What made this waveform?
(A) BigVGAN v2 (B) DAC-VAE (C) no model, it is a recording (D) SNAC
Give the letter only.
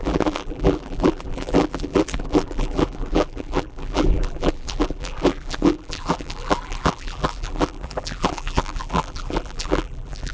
A